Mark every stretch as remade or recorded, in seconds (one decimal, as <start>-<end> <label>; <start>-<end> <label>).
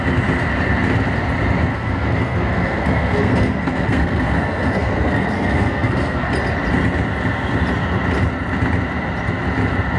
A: 0.0-1.7 recorded; 1.7-6.3 remade; 6.3-10.0 recorded